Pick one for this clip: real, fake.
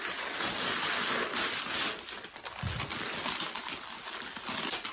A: real